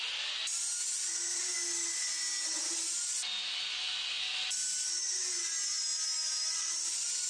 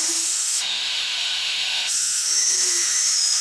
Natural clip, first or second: first